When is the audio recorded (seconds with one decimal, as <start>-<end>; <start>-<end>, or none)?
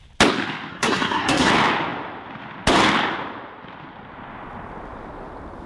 0.0-0.7; 1.5-5.7